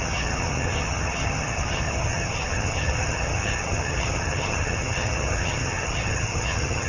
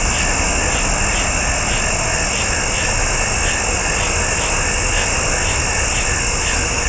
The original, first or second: second